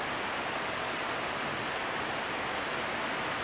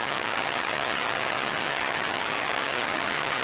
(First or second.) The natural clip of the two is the first